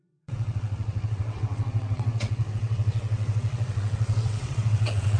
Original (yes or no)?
no